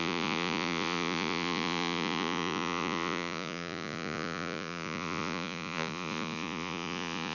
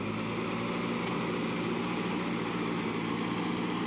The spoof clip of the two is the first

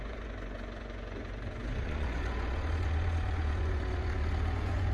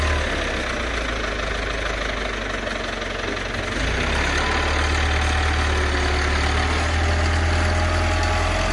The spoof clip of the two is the first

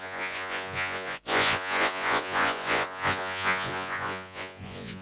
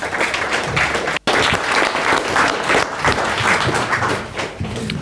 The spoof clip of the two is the first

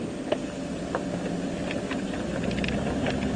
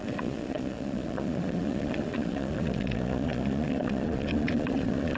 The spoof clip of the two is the second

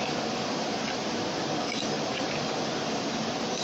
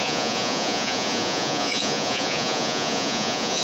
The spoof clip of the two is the second